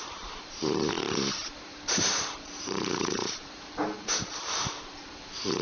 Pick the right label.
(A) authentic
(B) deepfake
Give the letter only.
B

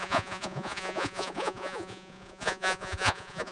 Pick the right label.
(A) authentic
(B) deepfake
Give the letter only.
B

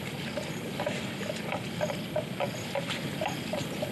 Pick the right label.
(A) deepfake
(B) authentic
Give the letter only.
B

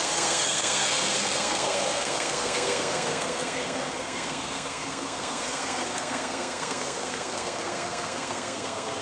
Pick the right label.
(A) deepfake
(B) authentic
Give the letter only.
A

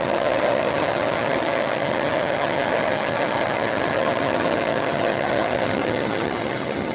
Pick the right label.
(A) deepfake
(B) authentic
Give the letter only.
A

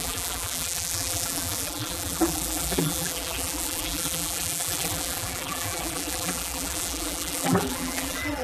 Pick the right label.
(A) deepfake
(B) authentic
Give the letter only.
A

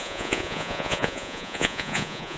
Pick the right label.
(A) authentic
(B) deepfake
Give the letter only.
B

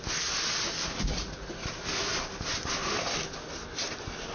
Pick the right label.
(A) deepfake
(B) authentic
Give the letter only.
B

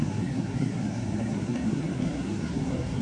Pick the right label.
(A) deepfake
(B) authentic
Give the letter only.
A